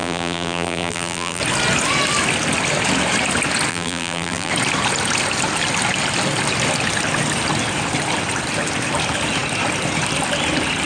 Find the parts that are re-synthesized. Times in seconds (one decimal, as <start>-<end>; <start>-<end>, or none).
0.0-1.4; 3.7-4.5

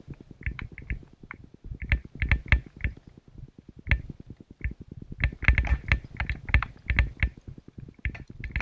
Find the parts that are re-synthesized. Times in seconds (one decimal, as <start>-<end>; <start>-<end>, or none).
none

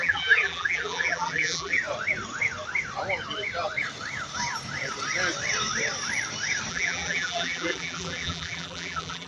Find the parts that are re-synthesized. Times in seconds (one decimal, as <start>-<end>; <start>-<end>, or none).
0.0-1.8; 6.7-9.3

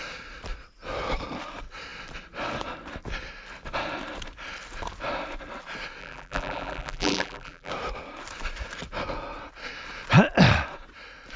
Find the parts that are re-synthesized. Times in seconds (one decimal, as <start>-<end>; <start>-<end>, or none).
6.0-7.7

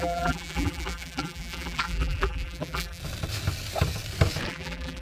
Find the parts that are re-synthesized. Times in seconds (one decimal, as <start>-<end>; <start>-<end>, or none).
0.0-3.0; 4.5-5.0

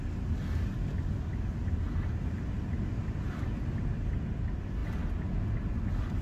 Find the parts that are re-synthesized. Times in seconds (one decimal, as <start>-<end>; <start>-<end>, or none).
none